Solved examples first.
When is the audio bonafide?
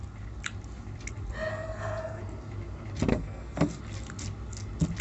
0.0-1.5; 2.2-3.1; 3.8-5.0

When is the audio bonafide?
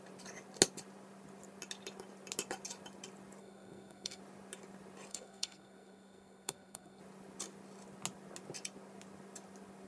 0.0-3.4; 4.2-5.1; 7.0-9.9